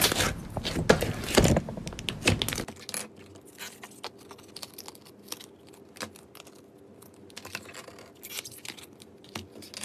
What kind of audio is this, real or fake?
real